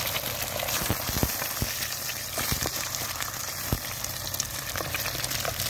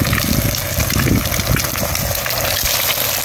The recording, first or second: second